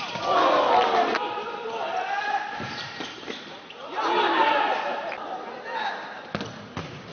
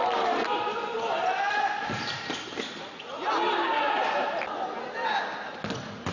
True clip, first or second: second